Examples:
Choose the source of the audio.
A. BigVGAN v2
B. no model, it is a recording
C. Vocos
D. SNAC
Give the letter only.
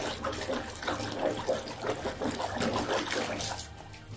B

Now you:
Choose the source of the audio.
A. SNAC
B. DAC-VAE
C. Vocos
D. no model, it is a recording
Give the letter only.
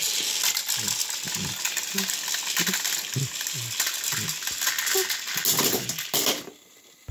D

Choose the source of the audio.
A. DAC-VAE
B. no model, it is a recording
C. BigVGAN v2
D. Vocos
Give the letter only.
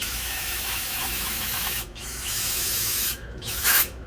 A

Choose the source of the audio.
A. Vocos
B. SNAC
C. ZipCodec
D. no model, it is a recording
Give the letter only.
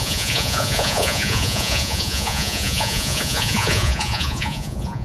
A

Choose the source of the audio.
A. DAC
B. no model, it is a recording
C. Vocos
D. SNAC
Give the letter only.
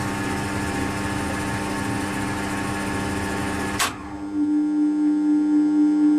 B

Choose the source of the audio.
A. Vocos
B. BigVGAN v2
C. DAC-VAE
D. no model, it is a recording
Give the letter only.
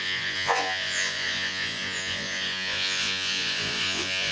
A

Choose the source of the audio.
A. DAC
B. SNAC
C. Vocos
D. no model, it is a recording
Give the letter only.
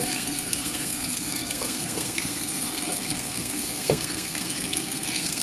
B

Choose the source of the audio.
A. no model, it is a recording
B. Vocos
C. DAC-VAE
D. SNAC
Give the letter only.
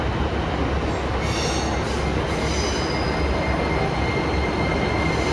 A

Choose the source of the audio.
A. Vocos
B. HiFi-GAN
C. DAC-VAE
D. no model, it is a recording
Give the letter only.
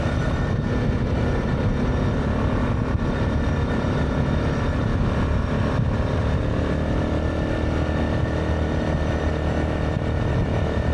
D